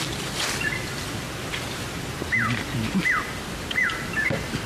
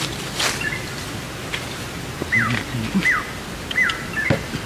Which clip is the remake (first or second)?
first